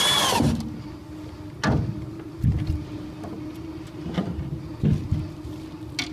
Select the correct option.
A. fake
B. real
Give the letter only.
B